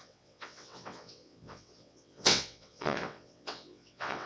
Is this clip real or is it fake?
fake